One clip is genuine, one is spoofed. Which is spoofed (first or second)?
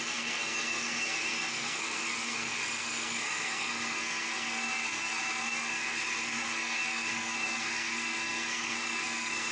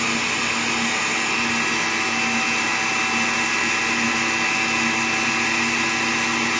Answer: first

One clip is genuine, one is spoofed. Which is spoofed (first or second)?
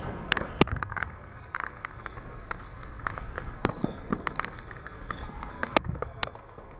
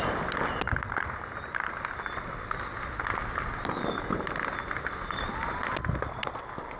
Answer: first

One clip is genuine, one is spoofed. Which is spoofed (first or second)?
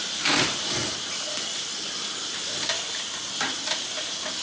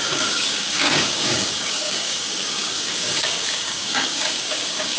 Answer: second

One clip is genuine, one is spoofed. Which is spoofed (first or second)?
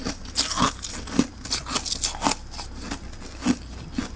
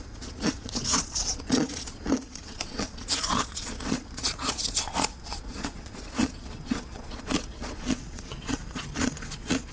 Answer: second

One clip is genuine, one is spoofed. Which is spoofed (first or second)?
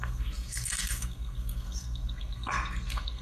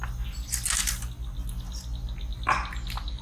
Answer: first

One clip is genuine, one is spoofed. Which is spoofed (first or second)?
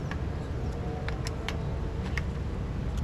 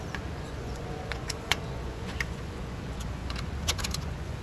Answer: second